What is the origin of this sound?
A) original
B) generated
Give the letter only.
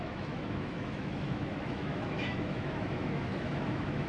B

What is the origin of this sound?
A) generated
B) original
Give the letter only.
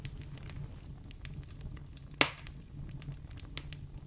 B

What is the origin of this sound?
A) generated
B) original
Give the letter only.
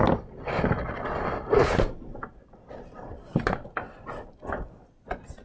B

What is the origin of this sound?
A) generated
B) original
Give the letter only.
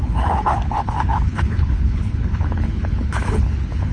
A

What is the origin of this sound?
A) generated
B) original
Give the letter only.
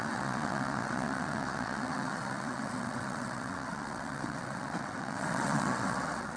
A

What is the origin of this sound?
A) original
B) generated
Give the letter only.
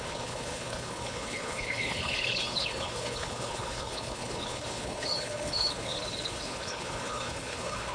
B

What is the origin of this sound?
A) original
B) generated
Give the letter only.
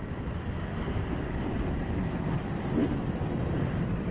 B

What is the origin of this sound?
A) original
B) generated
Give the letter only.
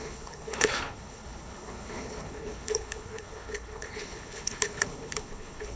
B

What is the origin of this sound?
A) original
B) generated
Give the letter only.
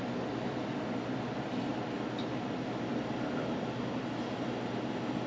A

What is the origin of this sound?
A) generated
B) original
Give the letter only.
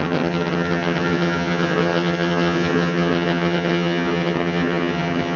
A